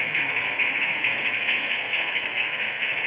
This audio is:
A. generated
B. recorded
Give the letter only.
A